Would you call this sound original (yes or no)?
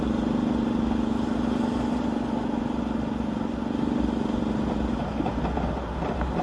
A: yes